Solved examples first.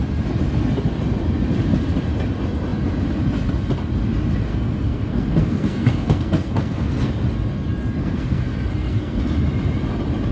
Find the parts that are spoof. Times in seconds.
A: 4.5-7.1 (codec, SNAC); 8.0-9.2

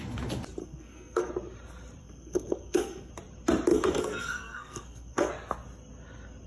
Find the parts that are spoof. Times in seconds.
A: 0.6-1.3 (codec, SNAC); 2.0-3.1; 3.7-5.3